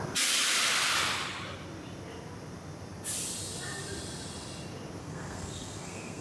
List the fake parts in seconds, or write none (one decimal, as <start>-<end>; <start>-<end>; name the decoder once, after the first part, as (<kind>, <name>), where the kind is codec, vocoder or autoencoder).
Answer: 5.0-6.2 (codec, SNAC)

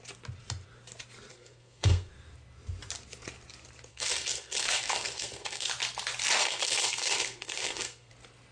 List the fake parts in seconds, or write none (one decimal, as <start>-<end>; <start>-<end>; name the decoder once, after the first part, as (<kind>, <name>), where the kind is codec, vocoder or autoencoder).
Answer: 1.3-2.1 (codec, SNAC); 3.9-5.7; 6.4-8.1

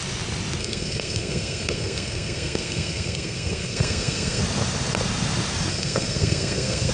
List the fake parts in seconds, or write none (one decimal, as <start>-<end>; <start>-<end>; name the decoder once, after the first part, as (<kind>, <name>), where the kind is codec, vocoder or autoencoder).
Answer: 0.6-4.4 (codec, SNAC); 5.7-6.9

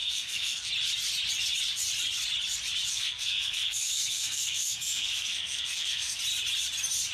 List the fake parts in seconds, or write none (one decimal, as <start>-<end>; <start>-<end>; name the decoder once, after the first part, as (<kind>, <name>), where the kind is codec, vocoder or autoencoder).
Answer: 0.0-0.7 (codec, SNAC); 2.9-6.2